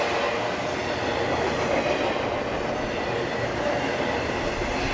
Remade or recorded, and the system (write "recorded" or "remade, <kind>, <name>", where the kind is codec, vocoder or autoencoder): recorded